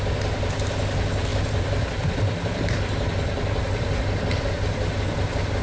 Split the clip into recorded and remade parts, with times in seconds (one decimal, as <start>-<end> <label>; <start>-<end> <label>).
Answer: 0.0-1.3 recorded; 1.3-4.0 remade; 4.0-5.6 recorded